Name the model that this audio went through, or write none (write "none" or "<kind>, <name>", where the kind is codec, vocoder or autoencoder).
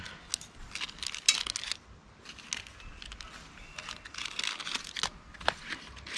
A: none